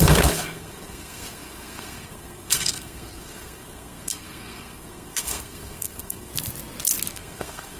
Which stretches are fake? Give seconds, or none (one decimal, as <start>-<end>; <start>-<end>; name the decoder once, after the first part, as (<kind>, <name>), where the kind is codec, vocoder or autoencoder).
0.0-6.3 (codec, SNAC); 7.1-7.8